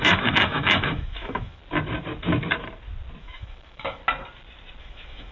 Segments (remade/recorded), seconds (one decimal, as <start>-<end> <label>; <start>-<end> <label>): 0.0-1.6 remade; 1.6-3.2 recorded; 3.2-4.0 remade; 4.0-4.8 recorded; 4.8-5.3 remade